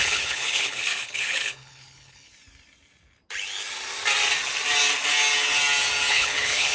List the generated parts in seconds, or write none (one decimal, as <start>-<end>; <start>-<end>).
0.0-2.3; 6.1-6.7